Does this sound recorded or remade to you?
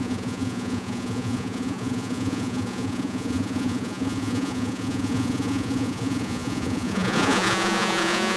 remade